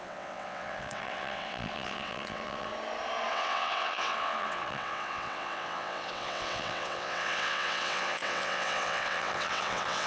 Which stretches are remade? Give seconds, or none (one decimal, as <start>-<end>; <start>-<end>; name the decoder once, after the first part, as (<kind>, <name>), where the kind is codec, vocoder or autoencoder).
0.0-2.7 (vocoder, WaveNeXt); 3.3-10.1